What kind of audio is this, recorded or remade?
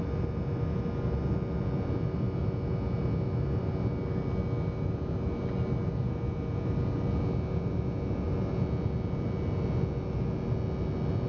recorded